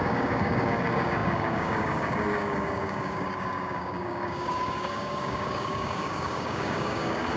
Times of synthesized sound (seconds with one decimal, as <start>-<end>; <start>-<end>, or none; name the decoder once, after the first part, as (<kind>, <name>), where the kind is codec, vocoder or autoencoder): 0.0-7.4 (codec, DAC)